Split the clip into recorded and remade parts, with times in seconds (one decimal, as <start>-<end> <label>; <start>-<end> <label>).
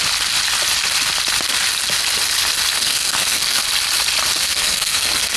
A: 0.0-2.8 recorded; 2.8-3.6 remade; 3.6-4.4 recorded; 4.4-5.4 remade